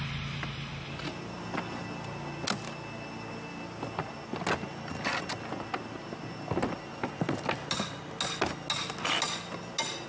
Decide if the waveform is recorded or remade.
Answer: recorded